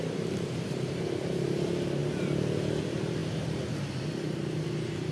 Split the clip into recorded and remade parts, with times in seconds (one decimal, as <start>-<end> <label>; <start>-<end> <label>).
0.0-5.1 recorded